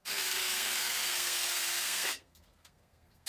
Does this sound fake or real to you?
fake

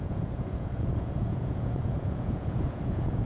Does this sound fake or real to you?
fake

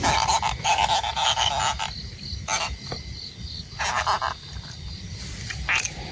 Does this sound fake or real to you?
real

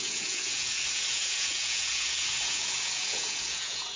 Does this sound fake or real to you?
fake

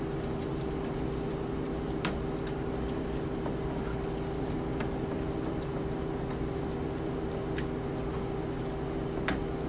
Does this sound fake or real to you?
real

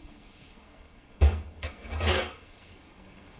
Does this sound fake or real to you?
fake